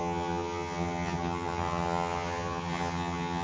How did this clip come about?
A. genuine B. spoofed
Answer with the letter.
B